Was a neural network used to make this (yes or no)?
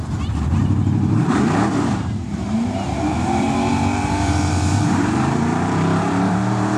yes